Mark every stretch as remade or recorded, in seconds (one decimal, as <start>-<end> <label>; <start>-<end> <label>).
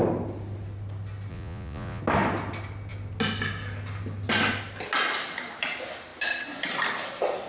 0.0-1.3 recorded; 1.3-2.0 remade; 2.0-7.5 recorded